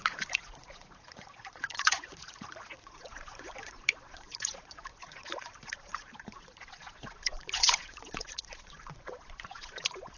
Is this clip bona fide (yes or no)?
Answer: no